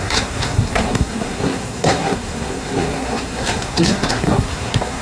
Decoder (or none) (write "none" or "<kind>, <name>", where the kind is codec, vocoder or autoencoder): codec, SNAC